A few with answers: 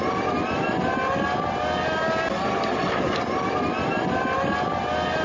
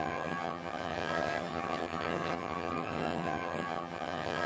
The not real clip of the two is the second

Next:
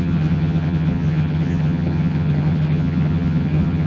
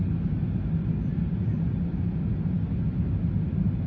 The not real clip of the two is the first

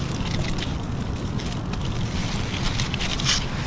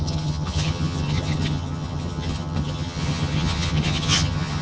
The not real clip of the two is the second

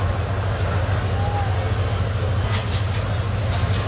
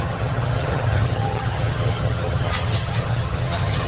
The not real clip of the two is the second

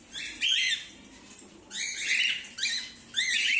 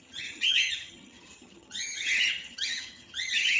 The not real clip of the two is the second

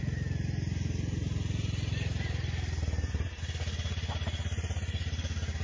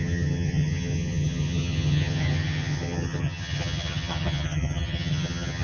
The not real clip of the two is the second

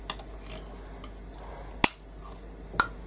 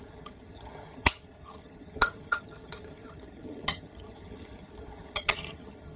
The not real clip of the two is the second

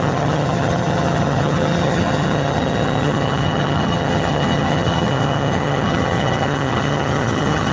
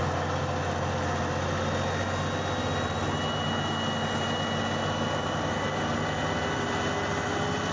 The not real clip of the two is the first